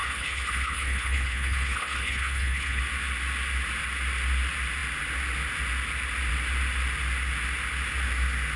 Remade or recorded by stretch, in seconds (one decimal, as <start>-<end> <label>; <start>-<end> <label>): 0.0-2.8 remade; 2.8-8.6 recorded